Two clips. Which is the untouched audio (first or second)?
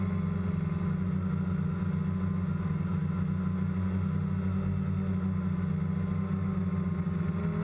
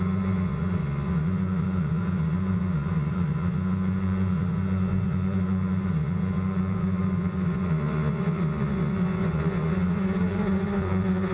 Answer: first